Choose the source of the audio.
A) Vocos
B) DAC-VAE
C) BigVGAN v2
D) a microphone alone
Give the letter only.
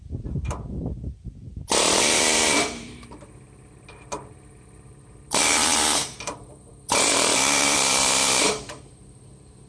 C